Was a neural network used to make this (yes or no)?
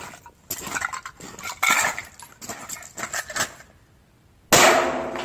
no